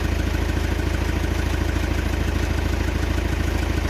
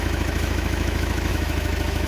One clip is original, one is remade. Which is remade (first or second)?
second